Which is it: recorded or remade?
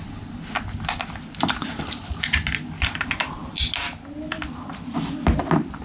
recorded